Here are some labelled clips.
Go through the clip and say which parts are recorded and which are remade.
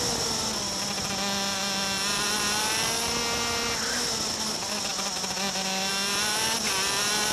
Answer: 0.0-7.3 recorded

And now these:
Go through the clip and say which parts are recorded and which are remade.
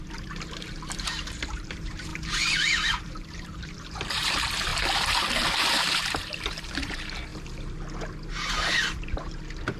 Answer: 0.0-4.7 remade; 4.7-5.5 recorded; 5.5-7.3 remade; 7.3-8.3 recorded; 8.3-9.8 remade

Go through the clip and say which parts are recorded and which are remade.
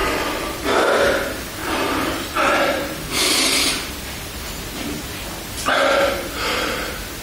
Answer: 0.0-1.6 recorded; 1.6-3.7 remade; 3.7-7.2 recorded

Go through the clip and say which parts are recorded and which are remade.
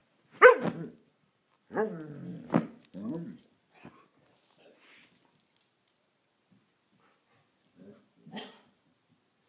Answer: 0.0-1.1 recorded; 1.1-2.3 remade; 2.3-9.5 recorded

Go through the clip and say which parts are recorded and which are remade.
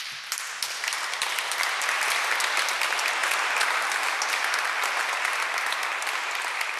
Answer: 0.0-6.8 recorded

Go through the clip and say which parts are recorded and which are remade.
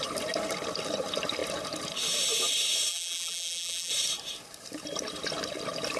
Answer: 0.0-2.9 recorded; 2.9-3.9 remade; 3.9-6.0 recorded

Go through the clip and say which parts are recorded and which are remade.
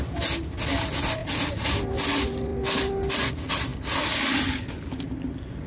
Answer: 0.0-1.2 recorded; 1.2-1.8 remade; 1.8-5.7 recorded